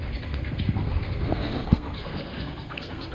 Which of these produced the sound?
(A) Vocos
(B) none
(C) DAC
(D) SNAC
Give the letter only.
D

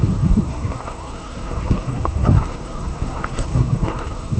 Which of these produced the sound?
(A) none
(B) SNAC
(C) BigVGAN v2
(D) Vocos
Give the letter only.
B